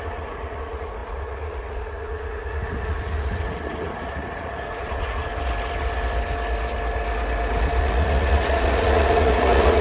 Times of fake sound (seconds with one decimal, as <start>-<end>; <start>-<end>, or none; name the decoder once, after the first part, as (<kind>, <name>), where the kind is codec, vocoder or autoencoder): 0.0-5.2 (vocoder, Vocos); 7.8-9.8